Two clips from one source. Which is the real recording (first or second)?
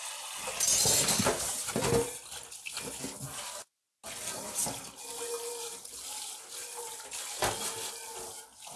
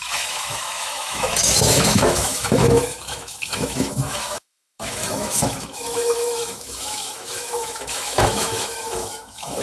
first